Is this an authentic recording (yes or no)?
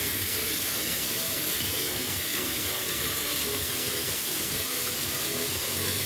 no